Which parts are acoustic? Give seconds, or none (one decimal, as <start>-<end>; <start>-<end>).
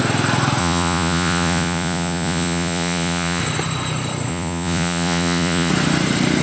0.0-0.6; 3.4-4.3; 5.7-6.4